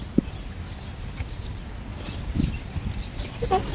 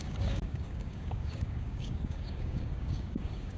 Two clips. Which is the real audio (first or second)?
first